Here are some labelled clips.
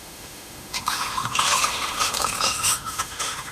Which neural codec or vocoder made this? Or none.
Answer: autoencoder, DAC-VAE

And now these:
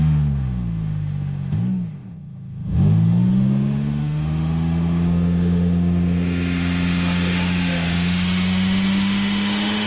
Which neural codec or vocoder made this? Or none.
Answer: autoencoder, DAC-VAE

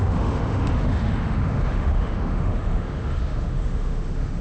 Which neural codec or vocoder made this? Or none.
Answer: autoencoder, DAC-VAE